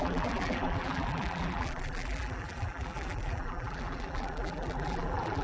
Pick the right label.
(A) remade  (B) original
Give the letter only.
A